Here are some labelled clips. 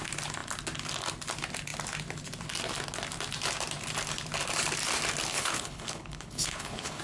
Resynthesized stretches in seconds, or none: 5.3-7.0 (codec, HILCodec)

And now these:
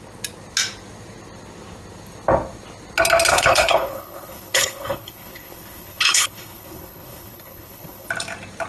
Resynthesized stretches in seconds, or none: 3.3-8.1 (codec, HILCodec)

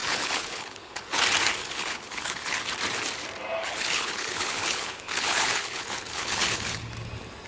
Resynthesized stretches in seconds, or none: 0.0-1.2 (codec, HILCodec); 1.6-2.6; 3.6-6.9

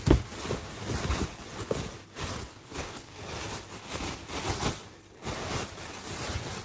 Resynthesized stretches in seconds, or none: 2.5-3.2 (codec, HILCodec)

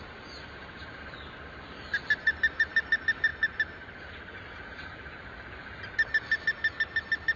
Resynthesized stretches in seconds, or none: none

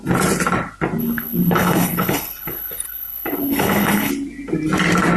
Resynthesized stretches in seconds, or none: 1.0-4.1 (codec, HILCodec)

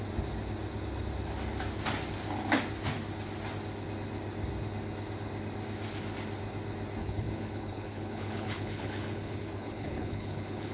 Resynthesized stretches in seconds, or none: 7.0-10.7 (codec, HILCodec)

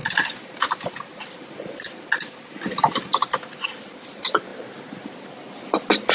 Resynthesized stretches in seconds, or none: none